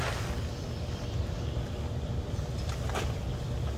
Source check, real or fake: real